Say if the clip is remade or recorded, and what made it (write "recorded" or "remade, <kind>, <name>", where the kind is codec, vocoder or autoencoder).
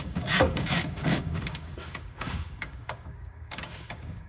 remade, codec, DAC